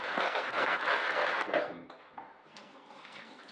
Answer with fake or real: fake